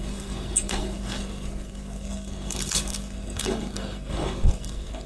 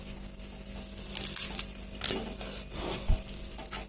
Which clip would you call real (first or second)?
second